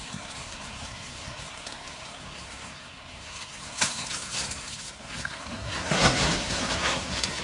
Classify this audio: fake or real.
fake